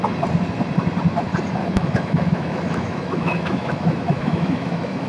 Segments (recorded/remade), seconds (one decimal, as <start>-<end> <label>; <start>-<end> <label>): 0.0-1.6 recorded; 1.6-5.1 remade